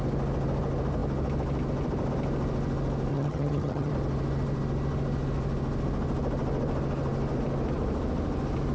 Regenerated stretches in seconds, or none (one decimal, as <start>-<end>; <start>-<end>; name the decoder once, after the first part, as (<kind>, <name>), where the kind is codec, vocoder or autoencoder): 3.1-3.9 (vocoder, HiFi-GAN)